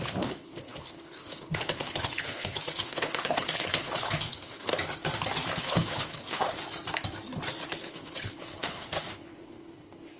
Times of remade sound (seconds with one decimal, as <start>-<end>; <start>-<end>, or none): 0.0-4.7; 5.6-6.6; 7.7-10.2